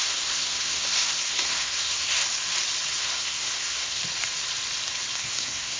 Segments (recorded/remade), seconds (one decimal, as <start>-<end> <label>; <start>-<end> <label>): 0.0-2.2 remade; 2.2-2.9 recorded; 2.9-4.0 remade; 4.0-5.2 recorded; 5.2-5.8 remade